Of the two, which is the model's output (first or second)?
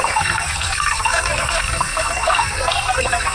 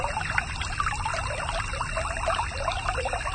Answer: first